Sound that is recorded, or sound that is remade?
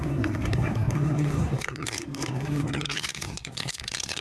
remade